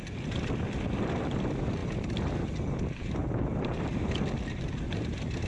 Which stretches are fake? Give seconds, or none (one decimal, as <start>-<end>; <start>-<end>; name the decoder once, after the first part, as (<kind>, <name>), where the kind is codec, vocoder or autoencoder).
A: 3.2-4.0 (vocoder, BigVGAN v2)